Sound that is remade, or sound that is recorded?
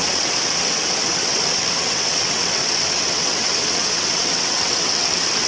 remade